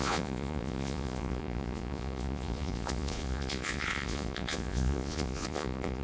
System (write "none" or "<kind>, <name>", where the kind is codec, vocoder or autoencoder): vocoder, Vocos